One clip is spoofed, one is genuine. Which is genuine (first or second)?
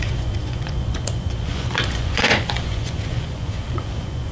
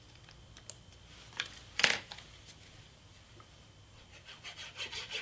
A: second